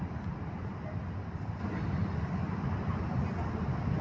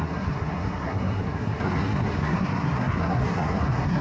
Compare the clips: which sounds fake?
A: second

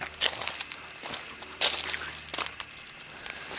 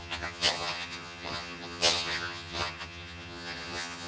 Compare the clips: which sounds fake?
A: second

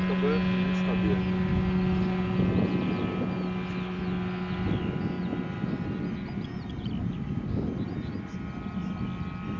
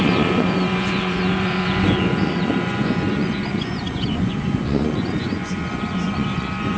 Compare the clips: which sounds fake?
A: second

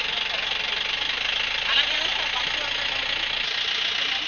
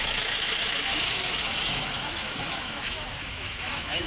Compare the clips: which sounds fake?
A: second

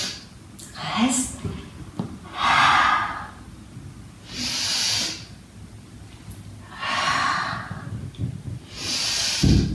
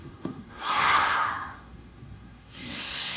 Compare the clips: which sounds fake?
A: second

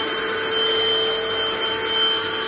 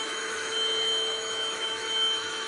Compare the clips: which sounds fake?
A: second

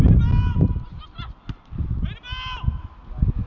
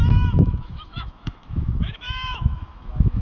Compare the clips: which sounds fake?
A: second